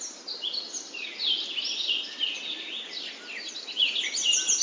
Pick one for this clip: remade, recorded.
recorded